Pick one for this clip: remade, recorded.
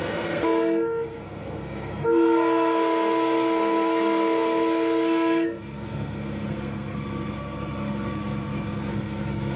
remade